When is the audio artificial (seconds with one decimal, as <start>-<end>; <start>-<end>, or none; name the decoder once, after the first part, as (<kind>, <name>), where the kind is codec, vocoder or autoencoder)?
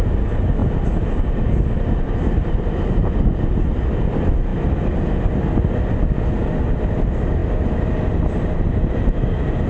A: none